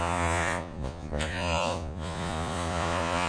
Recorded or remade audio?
remade